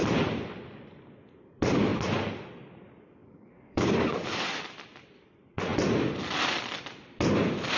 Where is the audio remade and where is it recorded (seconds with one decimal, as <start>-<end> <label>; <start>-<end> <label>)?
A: 0.0-3.2 recorded; 3.2-4.6 remade; 4.6-7.8 recorded